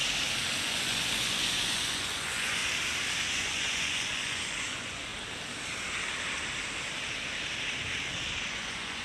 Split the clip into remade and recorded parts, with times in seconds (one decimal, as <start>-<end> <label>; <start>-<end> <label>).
0.0-0.6 recorded; 0.6-2.6 remade; 2.6-3.3 recorded; 3.3-5.1 remade; 5.1-8.3 recorded; 8.3-9.0 remade